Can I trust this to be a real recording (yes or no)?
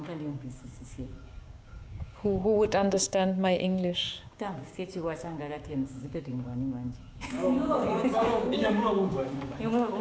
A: no